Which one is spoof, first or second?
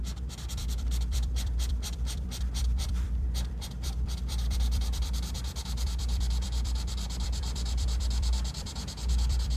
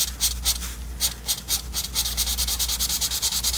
first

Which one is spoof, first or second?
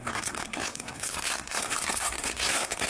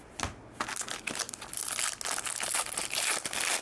first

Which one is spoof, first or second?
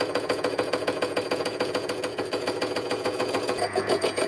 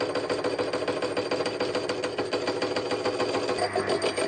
first